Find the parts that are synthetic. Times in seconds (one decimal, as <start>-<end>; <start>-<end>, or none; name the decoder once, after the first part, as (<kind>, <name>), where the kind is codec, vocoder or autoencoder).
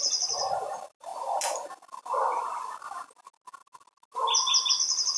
none